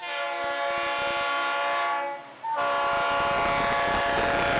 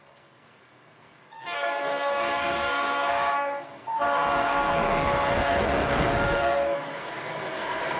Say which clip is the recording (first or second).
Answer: first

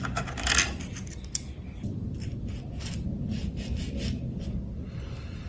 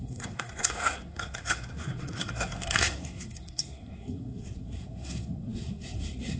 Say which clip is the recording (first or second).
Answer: first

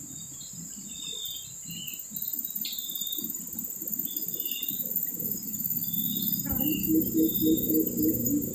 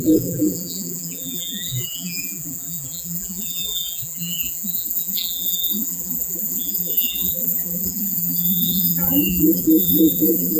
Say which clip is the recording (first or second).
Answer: first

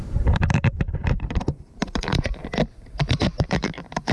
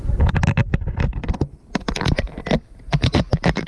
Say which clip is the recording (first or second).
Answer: second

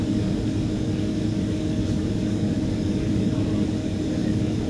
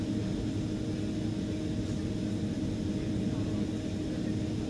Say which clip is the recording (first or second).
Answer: second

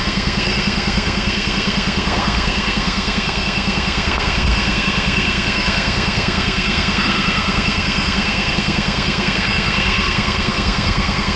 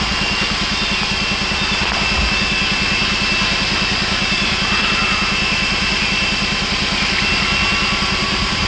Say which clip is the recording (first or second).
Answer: second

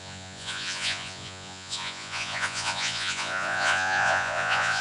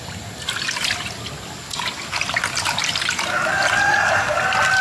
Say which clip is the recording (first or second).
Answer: second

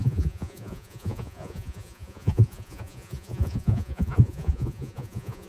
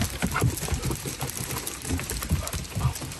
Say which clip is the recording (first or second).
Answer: second